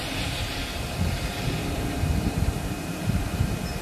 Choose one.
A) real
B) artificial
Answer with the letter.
B